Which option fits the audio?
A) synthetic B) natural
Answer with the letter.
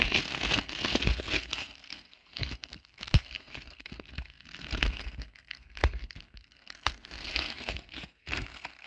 A